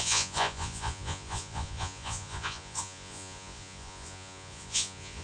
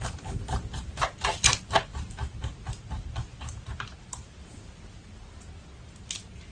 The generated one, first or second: first